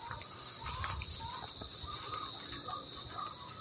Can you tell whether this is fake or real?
real